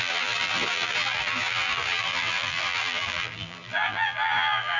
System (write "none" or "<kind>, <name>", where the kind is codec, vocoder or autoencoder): vocoder, BigVGAN v2